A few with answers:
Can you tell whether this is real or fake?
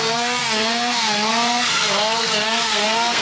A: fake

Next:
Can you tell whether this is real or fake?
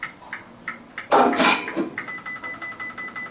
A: real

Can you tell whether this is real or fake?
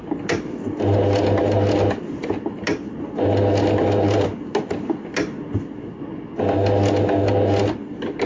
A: real